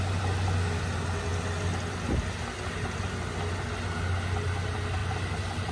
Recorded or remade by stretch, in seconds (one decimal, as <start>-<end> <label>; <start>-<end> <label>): 0.0-5.7 recorded